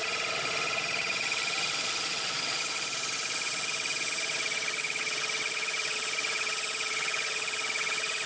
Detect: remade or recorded remade